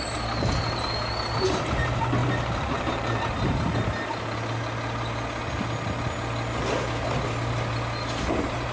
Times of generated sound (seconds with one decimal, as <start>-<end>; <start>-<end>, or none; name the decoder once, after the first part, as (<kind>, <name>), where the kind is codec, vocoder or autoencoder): 2.2-3.2 (vocoder, BigVGAN v2)